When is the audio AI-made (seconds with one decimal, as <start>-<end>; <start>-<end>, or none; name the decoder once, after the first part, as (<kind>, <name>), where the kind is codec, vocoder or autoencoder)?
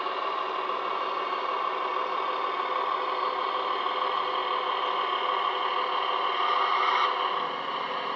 none